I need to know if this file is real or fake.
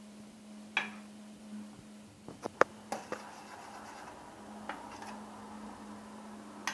real